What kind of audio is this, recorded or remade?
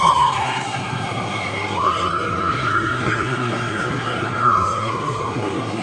remade